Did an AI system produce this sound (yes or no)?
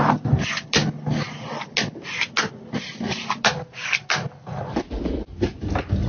no